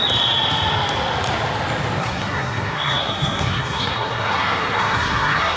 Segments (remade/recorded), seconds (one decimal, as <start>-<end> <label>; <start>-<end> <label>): 0.0-2.0 recorded; 2.0-5.6 remade